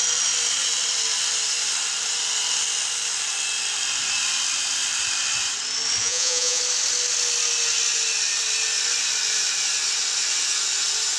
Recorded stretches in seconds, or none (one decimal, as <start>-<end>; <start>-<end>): 0.0-6.0; 6.6-11.2